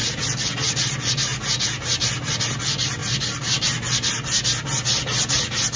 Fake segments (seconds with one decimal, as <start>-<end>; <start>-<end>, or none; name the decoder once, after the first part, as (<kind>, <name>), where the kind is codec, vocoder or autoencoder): none